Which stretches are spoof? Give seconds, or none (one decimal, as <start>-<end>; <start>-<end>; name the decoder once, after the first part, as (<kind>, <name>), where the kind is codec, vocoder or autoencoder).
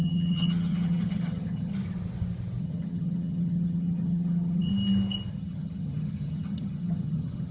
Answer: 0.0-1.7 (vocoder, HiFi-GAN); 2.6-4.7; 5.3-7.5